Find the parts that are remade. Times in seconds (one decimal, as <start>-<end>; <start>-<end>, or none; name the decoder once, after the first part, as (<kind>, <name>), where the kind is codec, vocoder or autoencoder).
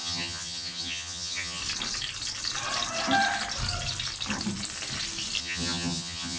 0.0-1.6 (vocoder, HiFi-GAN); 5.4-6.4